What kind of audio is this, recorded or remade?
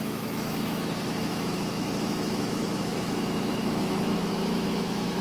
remade